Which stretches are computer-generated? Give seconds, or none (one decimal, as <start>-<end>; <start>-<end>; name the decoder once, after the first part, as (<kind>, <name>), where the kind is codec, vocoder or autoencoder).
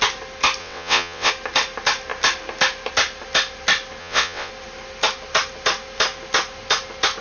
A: 0.6-1.3 (vocoder, WaveNeXt); 4.0-4.5